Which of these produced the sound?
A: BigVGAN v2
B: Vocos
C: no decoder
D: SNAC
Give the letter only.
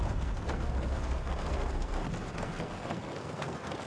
D